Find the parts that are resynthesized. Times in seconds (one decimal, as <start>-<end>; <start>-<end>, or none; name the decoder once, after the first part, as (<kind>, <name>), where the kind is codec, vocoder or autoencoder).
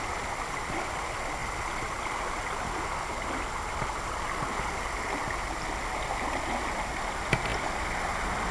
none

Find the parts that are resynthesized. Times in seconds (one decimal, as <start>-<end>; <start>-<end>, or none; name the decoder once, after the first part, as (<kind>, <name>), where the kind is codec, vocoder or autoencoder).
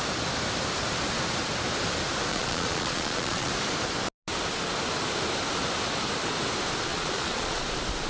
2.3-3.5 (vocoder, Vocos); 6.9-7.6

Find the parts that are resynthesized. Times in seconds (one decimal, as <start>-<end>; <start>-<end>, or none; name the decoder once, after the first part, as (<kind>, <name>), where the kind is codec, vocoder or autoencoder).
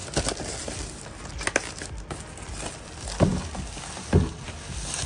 none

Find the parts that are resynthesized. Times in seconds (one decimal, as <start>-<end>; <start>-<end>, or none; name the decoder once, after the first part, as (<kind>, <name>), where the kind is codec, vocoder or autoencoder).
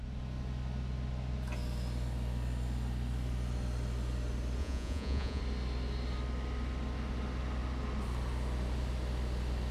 4.6-5.4 (vocoder, Vocos)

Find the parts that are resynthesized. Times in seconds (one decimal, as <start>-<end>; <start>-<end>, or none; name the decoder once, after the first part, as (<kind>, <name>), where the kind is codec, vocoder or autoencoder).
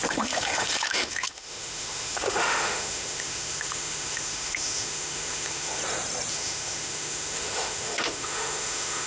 0.0-5.8 (autoencoder, DAC-VAE); 6.3-9.1